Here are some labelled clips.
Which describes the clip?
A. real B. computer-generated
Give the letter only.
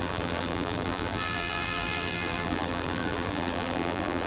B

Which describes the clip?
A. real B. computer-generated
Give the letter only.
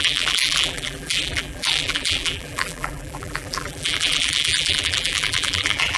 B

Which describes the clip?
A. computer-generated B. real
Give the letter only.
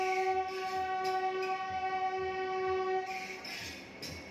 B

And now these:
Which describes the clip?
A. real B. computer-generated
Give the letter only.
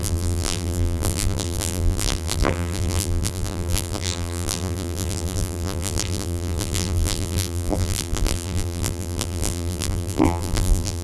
B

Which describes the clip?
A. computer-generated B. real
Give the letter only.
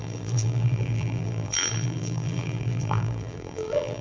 A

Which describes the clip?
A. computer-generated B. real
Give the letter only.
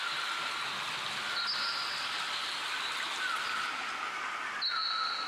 B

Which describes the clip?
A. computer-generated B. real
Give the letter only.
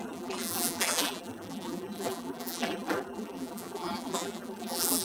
A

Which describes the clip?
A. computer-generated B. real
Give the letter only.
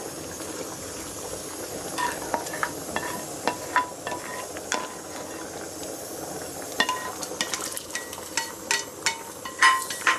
B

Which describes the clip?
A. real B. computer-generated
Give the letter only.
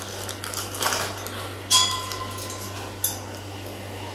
A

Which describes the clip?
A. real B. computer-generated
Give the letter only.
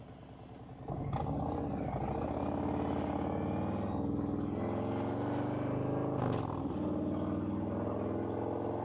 A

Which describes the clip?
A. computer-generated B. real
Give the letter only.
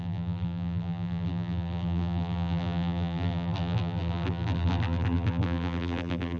A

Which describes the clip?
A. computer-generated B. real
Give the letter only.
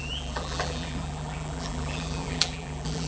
A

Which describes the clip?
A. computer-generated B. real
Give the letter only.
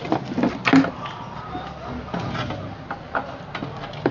A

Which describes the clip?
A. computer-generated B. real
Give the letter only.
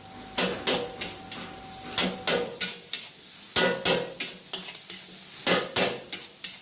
B